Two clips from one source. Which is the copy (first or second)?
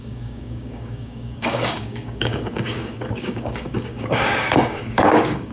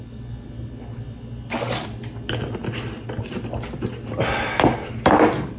first